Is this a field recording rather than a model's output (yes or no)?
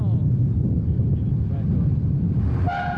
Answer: yes